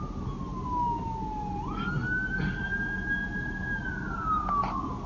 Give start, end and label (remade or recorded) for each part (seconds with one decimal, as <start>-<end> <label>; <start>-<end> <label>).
0.0-5.1 recorded